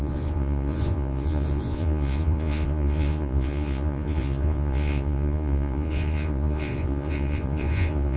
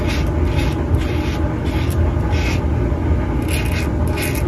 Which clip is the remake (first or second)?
first